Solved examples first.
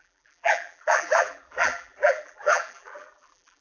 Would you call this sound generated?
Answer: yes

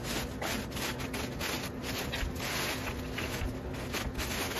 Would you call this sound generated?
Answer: no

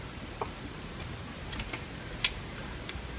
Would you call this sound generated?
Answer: no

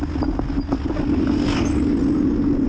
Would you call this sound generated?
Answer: no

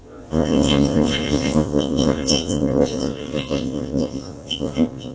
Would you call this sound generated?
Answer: yes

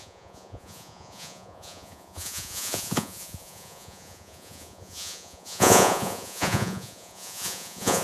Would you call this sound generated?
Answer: yes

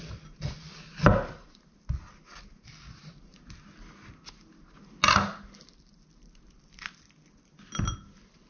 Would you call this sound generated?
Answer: no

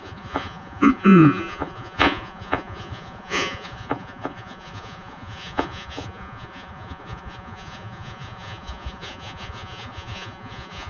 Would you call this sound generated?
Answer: yes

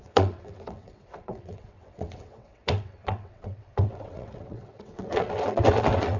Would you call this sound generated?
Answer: yes